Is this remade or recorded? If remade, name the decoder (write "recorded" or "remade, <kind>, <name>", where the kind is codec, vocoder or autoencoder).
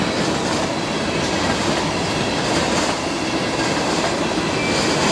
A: recorded